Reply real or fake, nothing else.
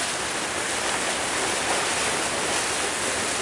real